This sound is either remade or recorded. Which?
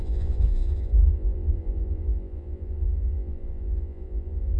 remade